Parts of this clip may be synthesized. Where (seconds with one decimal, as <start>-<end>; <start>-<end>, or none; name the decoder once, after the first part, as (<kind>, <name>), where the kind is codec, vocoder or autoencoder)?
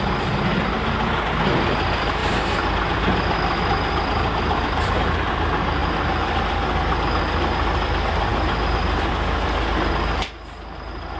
2.2-4.9 (vocoder, BigVGAN v2)